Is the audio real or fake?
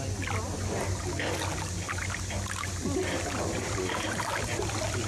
real